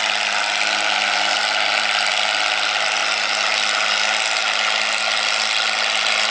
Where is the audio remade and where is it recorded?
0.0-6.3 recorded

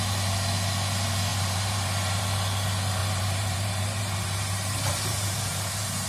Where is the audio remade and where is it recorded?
0.0-1.3 recorded; 1.3-2.2 remade; 2.2-3.0 recorded; 3.0-6.1 remade

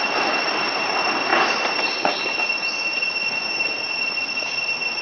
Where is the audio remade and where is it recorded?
0.0-5.0 recorded

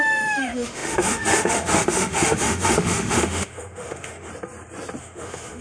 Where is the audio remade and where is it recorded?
0.0-4.3 remade; 4.3-5.0 recorded; 5.0-5.6 remade

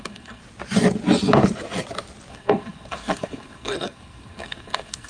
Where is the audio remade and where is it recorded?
0.0-0.4 remade; 0.4-2.3 recorded; 2.3-5.1 remade

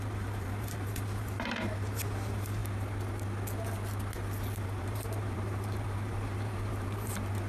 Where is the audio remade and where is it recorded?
0.0-2.6 remade; 2.6-4.6 recorded; 4.6-7.5 remade